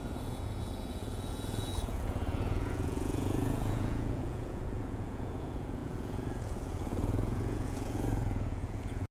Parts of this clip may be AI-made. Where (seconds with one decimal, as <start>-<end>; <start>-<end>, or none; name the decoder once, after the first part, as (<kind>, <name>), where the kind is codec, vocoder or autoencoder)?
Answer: 0.0-9.1 (vocoder, Vocos)